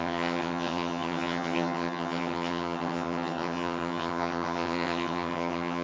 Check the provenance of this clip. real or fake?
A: fake